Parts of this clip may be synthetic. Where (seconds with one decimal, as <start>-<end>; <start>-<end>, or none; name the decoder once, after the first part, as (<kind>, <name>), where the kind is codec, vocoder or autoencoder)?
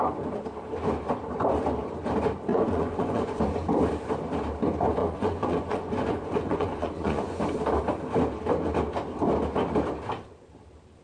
2.5-3.4 (vocoder, Vocos); 5.0-7.4